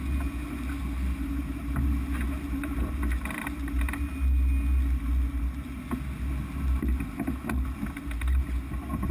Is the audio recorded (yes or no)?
yes